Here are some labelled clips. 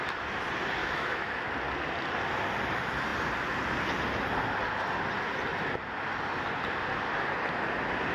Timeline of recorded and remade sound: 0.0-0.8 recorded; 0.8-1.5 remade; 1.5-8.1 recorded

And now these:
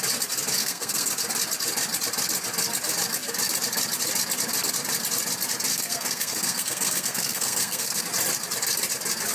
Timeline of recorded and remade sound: 0.0-0.6 recorded; 0.6-1.1 remade; 1.1-5.7 recorded; 5.7-8.0 remade; 8.0-9.3 recorded

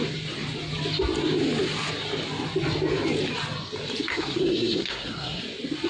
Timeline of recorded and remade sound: 0.0-4.1 recorded; 4.1-5.4 remade; 5.4-5.9 recorded